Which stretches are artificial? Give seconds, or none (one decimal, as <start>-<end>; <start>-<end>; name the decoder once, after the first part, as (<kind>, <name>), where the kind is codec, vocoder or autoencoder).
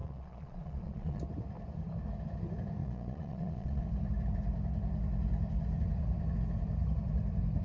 0.0-1.2 (vocoder, Vocos); 2.8-3.8